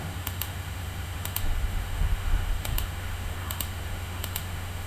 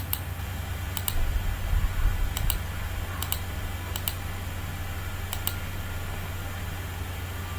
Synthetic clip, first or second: first